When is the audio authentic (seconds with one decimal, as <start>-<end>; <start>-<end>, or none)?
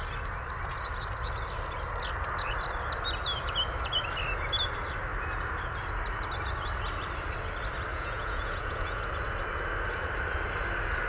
0.0-7.9; 9.0-11.1